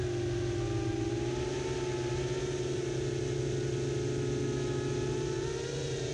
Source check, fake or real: real